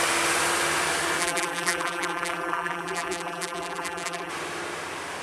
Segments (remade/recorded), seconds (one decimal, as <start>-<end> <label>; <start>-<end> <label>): 0.0-1.2 recorded; 1.2-4.3 remade; 4.3-5.2 recorded